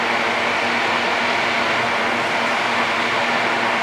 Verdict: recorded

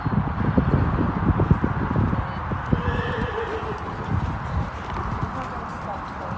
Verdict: recorded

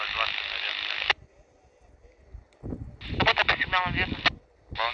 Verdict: recorded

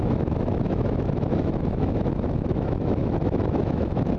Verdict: remade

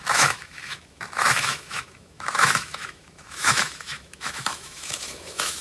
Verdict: remade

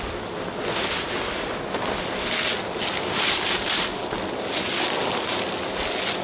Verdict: recorded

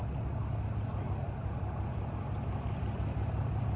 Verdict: recorded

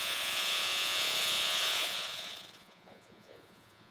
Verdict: remade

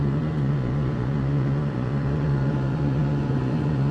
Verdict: remade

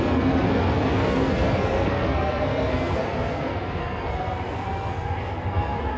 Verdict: remade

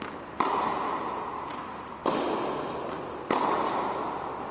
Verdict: recorded